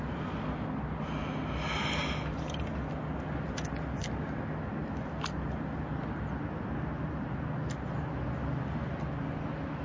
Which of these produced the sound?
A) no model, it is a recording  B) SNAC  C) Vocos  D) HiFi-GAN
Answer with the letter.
A